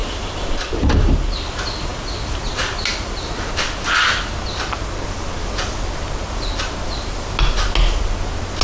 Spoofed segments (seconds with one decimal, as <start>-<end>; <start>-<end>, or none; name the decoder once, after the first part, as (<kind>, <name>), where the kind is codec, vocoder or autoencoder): none